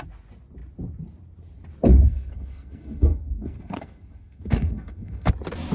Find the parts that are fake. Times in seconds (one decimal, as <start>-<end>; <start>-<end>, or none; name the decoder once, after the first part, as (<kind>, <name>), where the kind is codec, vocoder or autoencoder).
1.9-5.3 (codec, SNAC)